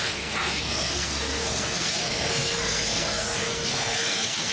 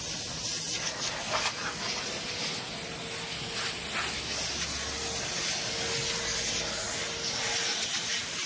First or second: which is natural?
second